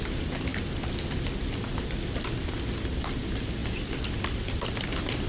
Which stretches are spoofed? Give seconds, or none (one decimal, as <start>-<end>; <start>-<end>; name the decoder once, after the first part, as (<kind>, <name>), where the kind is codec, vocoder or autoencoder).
none